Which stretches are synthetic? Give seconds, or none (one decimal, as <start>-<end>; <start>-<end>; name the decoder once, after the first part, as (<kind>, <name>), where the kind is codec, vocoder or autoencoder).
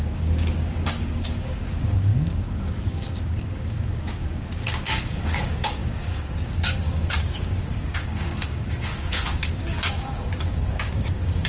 0.0-11.5 (codec, DAC)